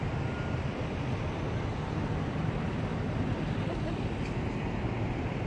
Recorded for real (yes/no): yes